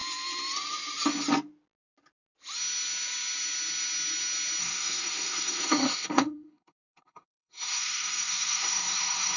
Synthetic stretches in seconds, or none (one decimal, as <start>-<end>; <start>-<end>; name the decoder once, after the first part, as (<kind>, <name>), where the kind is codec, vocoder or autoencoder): 4.6-9.4 (codec, SNAC)